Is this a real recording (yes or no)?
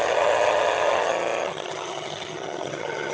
no